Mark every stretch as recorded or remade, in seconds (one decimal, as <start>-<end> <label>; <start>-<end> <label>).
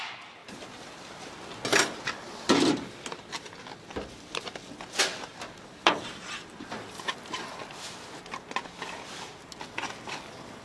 0.0-0.4 recorded; 0.4-1.0 remade; 1.0-5.3 recorded; 5.3-7.6 remade; 7.6-10.6 recorded